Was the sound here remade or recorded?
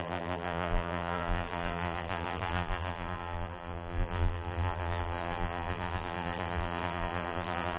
remade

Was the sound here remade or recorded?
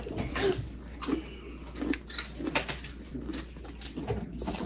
recorded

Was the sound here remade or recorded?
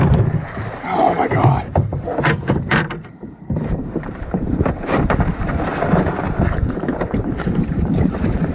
remade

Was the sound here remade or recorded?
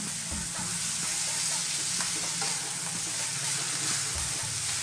recorded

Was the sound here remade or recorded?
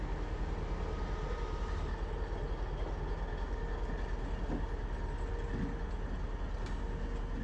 recorded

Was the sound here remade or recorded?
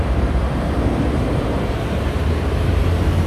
remade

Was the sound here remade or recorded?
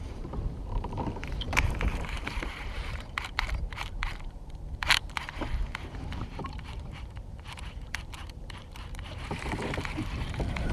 remade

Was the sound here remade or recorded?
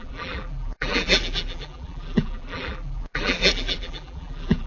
remade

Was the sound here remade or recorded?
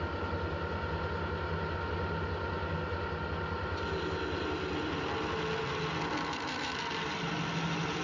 recorded